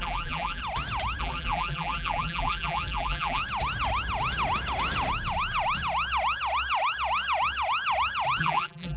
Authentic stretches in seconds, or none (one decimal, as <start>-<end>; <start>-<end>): 0.6-1.2; 3.4-8.4